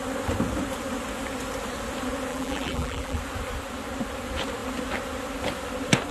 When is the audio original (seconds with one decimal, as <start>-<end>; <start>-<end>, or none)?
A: 0.0-2.3; 3.2-6.1